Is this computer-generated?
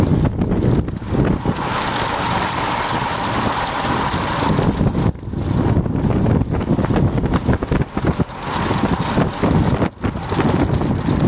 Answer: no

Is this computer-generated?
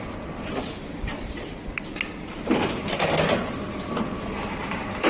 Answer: no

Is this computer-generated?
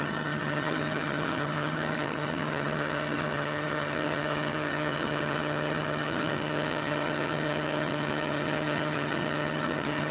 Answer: yes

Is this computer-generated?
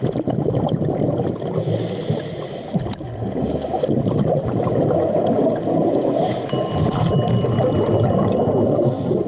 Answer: no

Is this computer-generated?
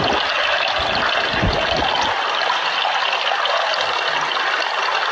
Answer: no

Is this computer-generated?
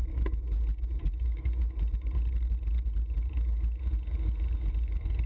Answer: no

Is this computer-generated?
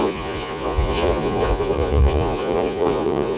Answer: yes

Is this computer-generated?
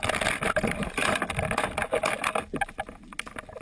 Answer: no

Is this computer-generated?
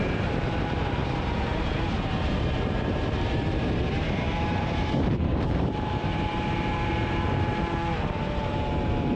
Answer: yes